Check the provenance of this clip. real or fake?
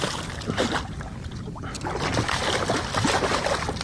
real